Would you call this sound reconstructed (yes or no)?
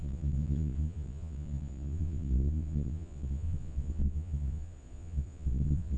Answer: yes